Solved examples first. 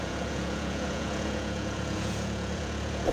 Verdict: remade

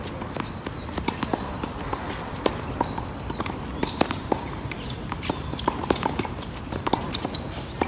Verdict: remade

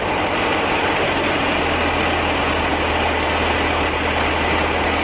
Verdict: recorded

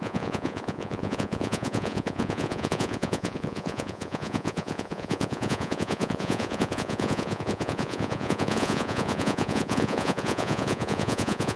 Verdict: remade